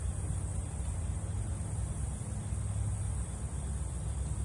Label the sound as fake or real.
real